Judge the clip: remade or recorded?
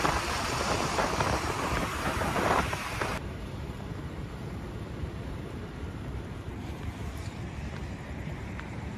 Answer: remade